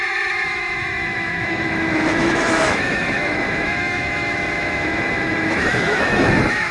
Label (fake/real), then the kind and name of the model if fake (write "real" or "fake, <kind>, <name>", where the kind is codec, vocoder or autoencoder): fake, autoencoder, DAC-VAE